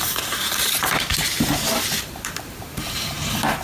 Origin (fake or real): fake